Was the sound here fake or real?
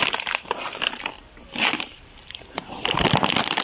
fake